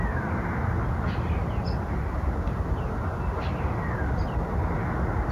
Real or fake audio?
real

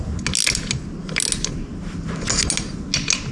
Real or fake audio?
real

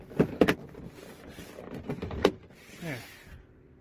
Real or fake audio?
real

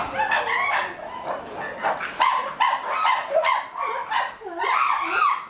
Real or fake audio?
real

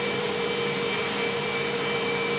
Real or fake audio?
fake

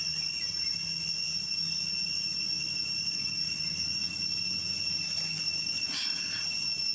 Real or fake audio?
real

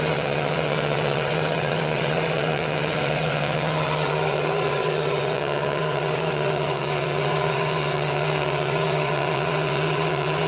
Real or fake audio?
fake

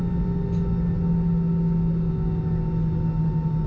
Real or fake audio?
real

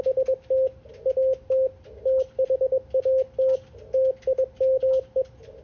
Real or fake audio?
real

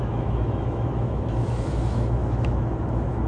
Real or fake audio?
fake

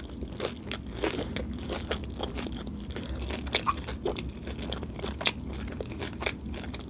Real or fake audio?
real